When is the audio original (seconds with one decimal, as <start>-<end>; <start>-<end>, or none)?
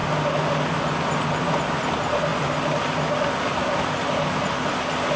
0.0-5.2